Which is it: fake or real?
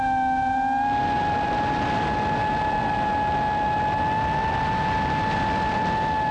real